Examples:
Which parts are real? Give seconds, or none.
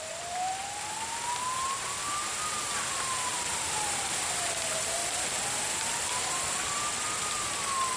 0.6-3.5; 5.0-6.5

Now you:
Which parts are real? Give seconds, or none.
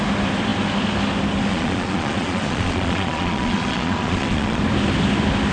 0.0-1.5; 4.6-5.5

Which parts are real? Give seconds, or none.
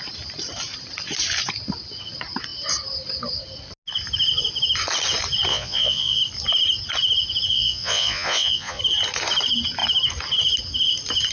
0.0-5.5; 6.2-7.5; 8.8-11.3